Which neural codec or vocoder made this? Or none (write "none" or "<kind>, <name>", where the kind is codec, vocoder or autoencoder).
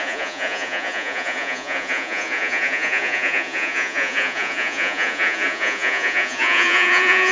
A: vocoder, Vocos